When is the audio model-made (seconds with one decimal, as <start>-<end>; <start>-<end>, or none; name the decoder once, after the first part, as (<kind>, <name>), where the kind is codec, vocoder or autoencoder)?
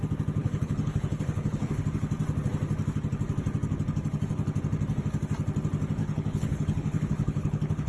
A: 0.4-1.8 (codec, HILCodec); 6.0-7.9